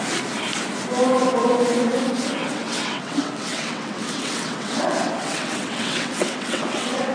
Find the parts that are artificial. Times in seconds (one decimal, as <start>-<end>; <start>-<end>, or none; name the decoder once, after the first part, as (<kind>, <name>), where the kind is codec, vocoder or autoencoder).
2.4-7.1 (vocoder, WaveNeXt)